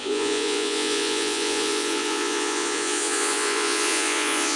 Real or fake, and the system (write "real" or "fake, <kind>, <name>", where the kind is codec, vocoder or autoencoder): fake, vocoder, Vocos